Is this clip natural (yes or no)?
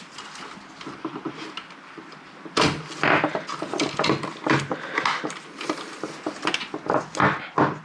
yes